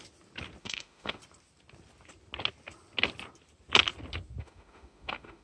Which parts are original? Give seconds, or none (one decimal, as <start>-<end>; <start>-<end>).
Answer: 0.0-0.6; 1.2-4.4